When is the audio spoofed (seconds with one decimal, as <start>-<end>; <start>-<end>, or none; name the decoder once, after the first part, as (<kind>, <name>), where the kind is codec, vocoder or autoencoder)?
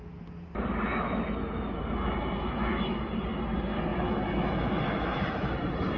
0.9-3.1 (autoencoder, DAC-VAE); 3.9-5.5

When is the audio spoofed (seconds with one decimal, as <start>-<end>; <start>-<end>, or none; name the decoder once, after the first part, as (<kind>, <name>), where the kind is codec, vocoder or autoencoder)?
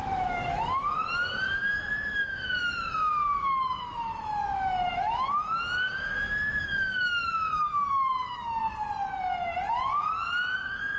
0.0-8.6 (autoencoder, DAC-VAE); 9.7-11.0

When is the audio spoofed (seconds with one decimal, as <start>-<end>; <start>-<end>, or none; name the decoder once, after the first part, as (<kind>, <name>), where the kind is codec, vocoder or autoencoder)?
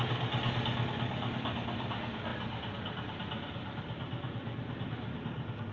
none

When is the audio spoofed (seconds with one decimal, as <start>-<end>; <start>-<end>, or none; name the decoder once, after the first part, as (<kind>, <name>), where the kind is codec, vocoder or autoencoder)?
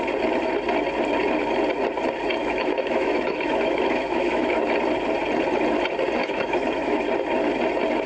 2.4-4.6 (autoencoder, DAC-VAE); 6.2-7.0